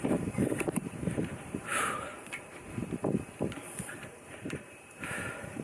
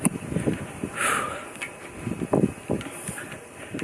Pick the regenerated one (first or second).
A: first